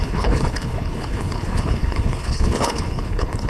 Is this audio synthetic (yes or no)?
yes